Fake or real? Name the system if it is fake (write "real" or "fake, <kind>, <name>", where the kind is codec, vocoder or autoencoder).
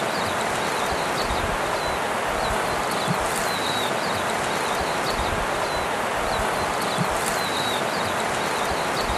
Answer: real